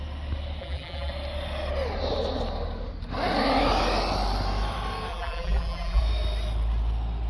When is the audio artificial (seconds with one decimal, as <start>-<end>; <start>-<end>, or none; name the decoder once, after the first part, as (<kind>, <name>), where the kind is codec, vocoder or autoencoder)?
0.6-1.1 (vocoder, BigVGAN v2); 5.1-6.0